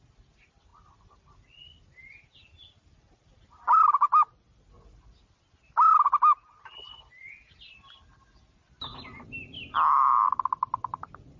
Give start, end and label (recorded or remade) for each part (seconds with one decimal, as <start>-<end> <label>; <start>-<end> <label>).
0.0-11.4 recorded